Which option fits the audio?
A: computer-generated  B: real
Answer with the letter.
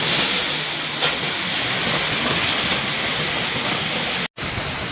B